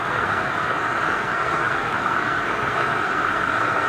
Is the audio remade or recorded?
remade